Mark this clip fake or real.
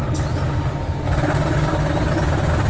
real